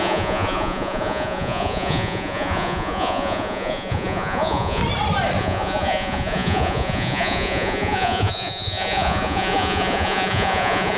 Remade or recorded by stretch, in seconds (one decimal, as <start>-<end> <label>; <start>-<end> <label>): 0.0-4.8 remade; 4.8-5.4 recorded; 5.4-11.0 remade